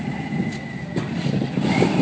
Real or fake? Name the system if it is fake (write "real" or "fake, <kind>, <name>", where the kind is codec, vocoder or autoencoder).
real